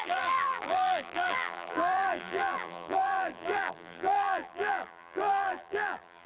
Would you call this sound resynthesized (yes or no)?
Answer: yes